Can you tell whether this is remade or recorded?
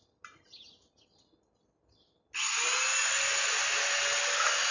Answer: recorded